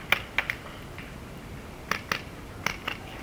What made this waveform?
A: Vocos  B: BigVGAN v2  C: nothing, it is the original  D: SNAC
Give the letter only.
C